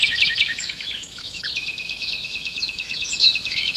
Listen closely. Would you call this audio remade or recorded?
remade